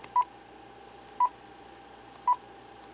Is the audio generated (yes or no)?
no